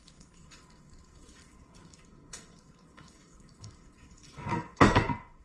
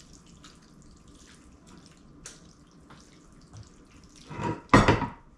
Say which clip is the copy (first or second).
first